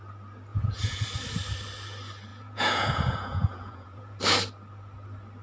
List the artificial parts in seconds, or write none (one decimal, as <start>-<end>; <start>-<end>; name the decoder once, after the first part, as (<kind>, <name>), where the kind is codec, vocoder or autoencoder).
0.5-1.0 (vocoder, Vocos); 2.3-4.2

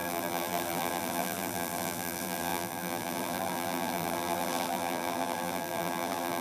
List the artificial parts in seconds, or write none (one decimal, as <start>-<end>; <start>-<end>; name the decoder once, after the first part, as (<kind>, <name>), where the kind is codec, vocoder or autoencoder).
0.0-6.4 (vocoder, BigVGAN v2)

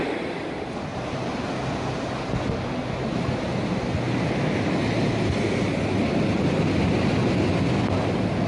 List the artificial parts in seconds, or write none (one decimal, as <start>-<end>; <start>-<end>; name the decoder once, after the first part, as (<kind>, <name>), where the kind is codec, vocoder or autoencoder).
0.9-1.5 (vocoder, BigVGAN v2)